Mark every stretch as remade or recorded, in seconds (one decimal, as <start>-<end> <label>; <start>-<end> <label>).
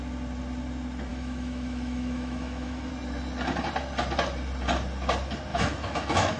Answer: 0.0-1.1 recorded; 1.1-2.9 remade; 2.9-5.5 recorded; 5.5-6.4 remade